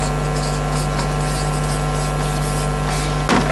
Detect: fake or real real